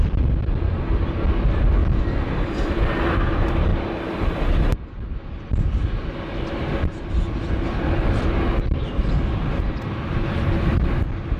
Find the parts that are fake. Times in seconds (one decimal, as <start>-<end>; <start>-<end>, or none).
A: none